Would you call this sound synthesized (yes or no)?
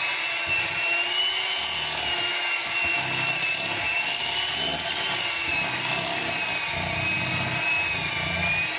no